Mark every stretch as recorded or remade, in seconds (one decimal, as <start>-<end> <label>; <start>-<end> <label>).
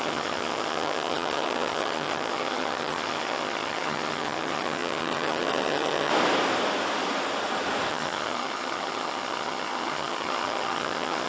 0.0-6.1 remade; 6.1-7.9 recorded; 7.9-11.3 remade